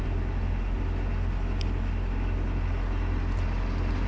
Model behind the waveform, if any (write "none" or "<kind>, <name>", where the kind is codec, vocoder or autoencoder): none